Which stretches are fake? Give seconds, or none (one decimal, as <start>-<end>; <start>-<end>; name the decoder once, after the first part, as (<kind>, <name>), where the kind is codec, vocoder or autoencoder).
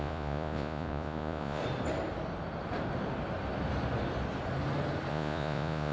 0.0-1.6 (vocoder, Vocos); 5.1-5.9